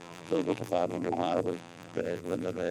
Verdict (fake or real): fake